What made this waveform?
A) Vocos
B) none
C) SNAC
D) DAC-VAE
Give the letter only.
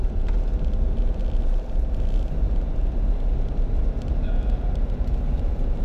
B